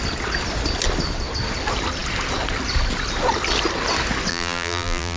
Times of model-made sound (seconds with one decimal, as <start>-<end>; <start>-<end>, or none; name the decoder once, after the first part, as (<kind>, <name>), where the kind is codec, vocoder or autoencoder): 4.3-5.2 (vocoder, BigVGAN v2)

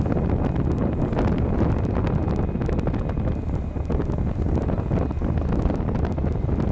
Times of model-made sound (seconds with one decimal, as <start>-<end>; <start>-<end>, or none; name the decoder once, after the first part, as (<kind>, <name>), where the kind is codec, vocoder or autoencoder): none

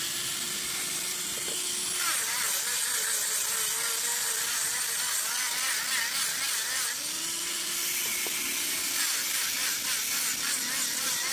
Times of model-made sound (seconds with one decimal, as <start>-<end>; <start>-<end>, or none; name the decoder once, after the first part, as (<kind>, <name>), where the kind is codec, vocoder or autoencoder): none